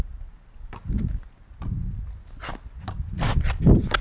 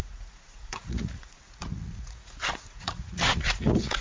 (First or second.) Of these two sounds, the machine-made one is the second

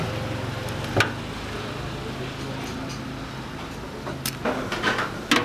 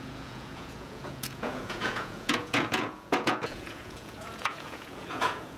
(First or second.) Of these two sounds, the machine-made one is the second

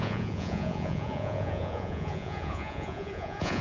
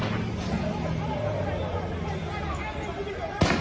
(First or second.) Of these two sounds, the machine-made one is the first